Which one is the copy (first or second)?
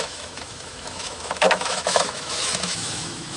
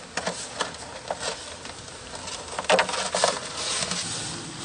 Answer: first